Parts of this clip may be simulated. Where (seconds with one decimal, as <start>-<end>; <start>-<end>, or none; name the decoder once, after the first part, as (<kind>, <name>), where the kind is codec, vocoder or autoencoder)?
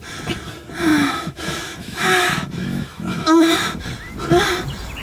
0.9-3.9 (autoencoder, DAC-VAE)